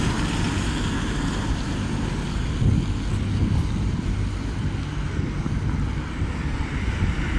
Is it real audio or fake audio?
real